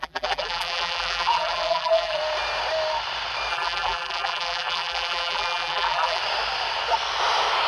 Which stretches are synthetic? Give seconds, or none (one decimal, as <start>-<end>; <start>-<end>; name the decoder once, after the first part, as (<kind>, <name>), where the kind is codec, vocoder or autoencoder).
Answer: 0.0-2.2 (vocoder, BigVGAN v2); 3.5-6.2